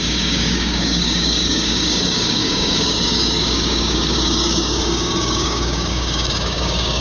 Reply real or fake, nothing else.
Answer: fake